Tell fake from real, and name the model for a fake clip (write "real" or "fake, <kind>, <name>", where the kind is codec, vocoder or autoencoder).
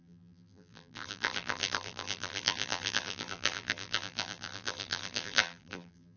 fake, vocoder, BigVGAN v2